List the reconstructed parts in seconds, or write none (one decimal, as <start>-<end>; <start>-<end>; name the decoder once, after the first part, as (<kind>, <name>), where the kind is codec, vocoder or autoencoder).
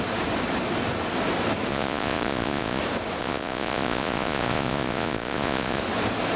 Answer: 1.7-2.8 (vocoder, Vocos); 3.2-5.8